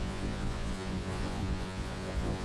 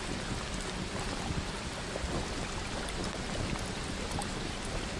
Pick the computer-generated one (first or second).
first